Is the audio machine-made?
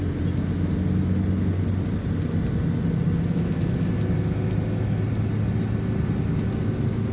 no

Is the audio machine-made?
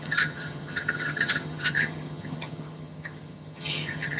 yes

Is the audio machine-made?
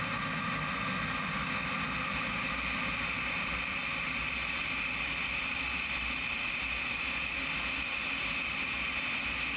no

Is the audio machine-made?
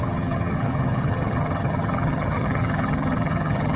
yes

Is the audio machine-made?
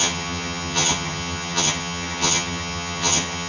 yes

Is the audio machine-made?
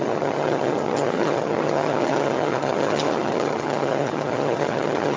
yes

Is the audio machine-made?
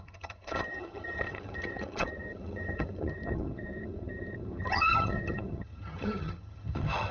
yes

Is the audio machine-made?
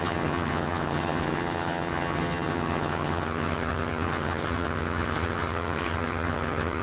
yes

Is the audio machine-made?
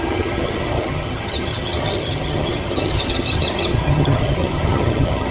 yes